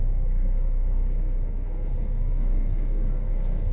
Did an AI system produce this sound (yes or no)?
yes